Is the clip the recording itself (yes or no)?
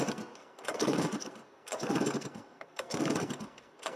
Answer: no